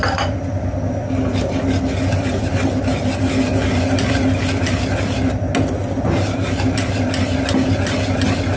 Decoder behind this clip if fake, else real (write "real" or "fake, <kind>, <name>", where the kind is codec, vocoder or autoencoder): real